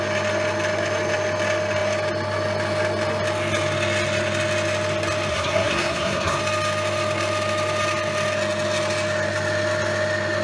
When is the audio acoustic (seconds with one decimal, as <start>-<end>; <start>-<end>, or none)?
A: 0.0-5.3; 6.4-10.4